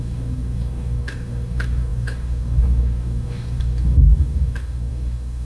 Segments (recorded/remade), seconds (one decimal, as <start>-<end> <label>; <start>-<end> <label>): 0.0-5.4 remade